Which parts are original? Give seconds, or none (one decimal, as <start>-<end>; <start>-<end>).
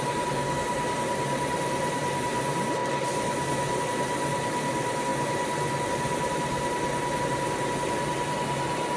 0.0-9.0